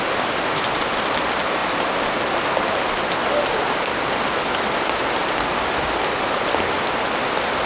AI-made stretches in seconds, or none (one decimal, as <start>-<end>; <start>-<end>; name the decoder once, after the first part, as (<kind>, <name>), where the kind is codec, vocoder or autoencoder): none